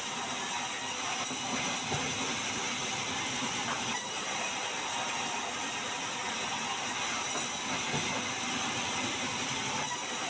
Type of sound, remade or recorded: recorded